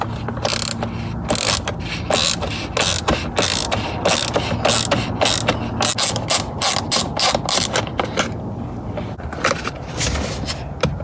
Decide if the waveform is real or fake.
real